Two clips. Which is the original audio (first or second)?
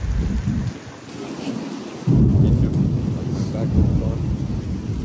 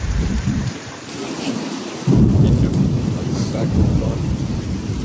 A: first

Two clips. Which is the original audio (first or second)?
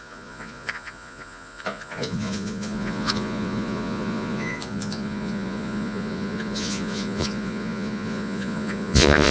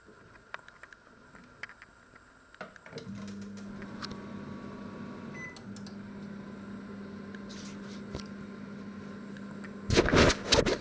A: second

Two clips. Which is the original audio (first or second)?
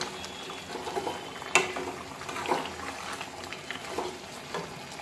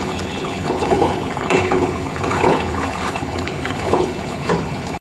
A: first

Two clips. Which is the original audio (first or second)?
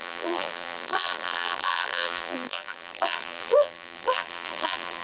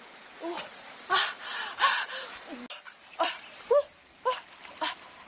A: second